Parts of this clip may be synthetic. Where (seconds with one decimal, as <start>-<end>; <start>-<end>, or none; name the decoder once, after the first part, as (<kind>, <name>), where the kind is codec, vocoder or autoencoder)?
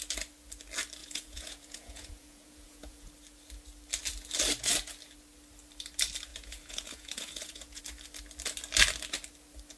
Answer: 1.0-3.1 (vocoder, Vocos); 6.3-7.8